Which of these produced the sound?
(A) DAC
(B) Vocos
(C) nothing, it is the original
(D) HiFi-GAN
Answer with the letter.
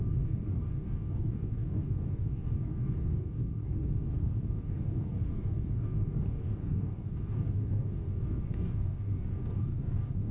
A